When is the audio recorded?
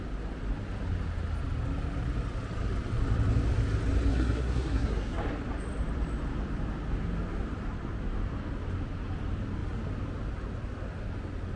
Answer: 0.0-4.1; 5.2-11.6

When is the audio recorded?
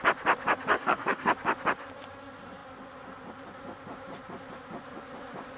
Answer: 0.0-0.7; 1.3-5.6